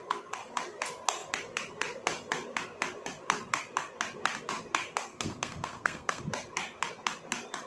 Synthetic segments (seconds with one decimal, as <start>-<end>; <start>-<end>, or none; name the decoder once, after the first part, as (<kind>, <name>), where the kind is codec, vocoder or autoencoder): 5.1-6.2 (codec, SNAC)